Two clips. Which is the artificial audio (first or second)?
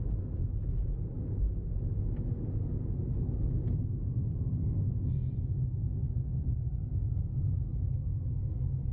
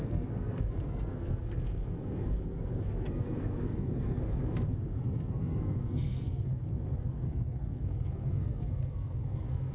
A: second